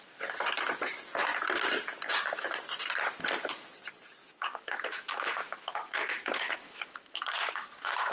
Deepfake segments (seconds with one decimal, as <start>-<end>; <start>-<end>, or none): 4.2-8.1